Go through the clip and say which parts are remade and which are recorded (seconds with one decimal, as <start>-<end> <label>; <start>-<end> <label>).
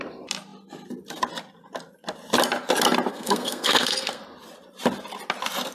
0.0-3.1 recorded; 3.1-4.2 remade; 4.2-5.7 recorded